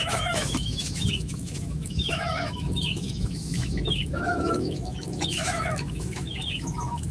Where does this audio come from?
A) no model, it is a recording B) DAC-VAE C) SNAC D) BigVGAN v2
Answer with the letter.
B